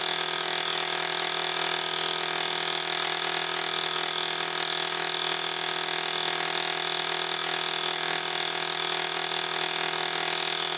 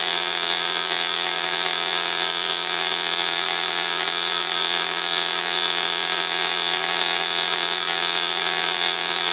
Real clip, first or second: first